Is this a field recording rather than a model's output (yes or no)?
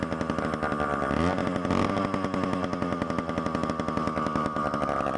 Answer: yes